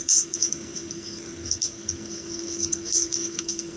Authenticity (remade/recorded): remade